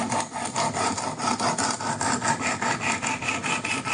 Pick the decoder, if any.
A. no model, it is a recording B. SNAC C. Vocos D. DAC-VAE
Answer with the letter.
A